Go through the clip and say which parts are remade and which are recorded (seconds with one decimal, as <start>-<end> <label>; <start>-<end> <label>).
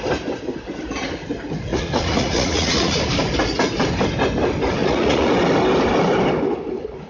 0.0-1.7 recorded; 1.7-3.0 remade; 3.0-4.8 recorded; 4.8-5.3 remade; 5.3-7.1 recorded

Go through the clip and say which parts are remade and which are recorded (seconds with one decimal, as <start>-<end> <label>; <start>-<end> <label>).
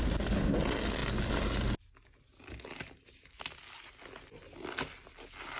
0.0-5.6 recorded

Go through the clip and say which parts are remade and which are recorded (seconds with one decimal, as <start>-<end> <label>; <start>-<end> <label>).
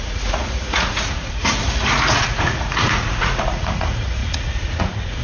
0.0-5.2 remade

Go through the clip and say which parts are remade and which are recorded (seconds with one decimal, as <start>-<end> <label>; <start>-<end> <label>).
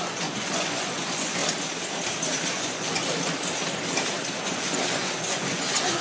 0.0-1.4 remade; 1.4-2.5 recorded; 2.5-3.0 remade; 3.0-4.4 recorded; 4.4-6.0 remade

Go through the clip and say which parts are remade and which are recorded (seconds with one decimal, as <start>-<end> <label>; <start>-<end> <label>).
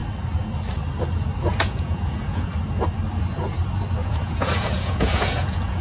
0.0-1.5 recorded; 1.5-2.5 remade; 2.5-4.0 recorded; 4.0-5.8 remade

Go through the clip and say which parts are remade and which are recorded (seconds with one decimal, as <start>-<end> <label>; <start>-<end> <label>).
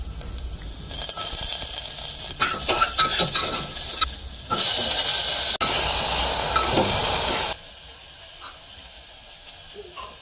0.0-10.2 recorded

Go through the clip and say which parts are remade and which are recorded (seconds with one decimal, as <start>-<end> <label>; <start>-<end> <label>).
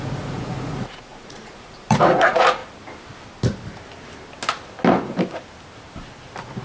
0.0-2.6 remade; 2.6-6.6 recorded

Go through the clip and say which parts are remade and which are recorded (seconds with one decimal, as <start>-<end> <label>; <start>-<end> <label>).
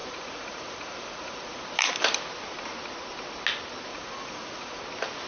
0.0-1.6 remade; 1.6-3.9 recorded; 3.9-4.8 remade; 4.8-5.3 recorded